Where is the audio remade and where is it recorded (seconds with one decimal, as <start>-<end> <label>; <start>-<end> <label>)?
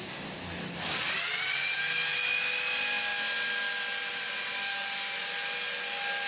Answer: 0.0-6.3 recorded